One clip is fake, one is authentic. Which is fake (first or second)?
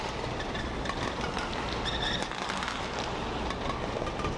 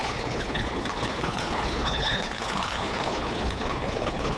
second